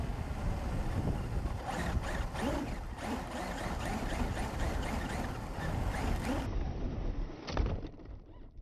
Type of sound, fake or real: fake